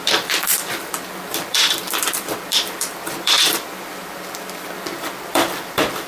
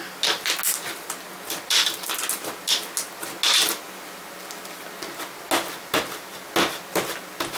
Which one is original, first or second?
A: second